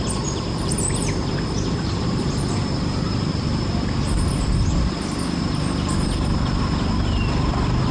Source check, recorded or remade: remade